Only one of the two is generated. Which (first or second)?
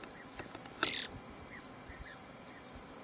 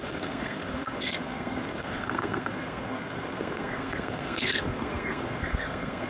second